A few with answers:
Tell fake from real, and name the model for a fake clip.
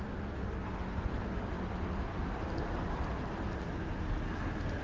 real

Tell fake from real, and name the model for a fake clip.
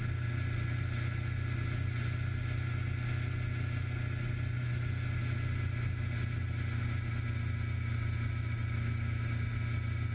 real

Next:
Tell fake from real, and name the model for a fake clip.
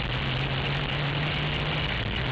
real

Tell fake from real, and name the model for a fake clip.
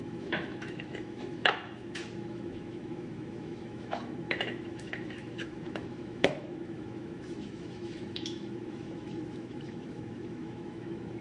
fake, autoencoder, DAC-VAE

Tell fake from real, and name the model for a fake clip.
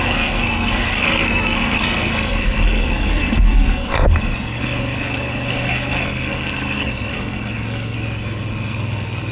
fake, codec, SNAC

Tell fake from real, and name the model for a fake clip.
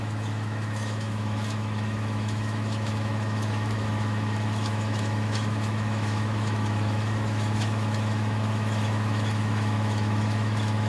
fake, autoencoder, DAC-VAE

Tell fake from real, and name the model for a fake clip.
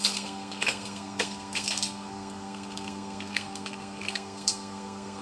fake, codec, SNAC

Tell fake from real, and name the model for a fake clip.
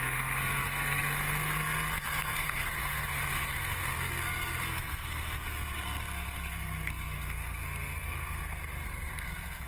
fake, codec, SNAC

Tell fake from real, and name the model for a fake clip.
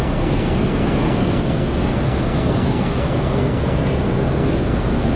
fake, codec, SNAC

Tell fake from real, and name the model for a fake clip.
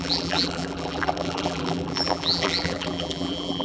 fake, vocoder, BigVGAN v2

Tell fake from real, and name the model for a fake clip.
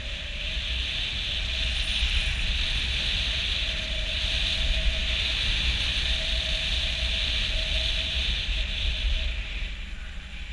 real